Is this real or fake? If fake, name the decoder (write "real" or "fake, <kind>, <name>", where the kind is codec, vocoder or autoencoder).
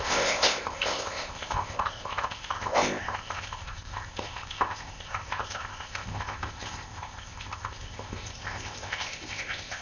fake, codec, ZipCodec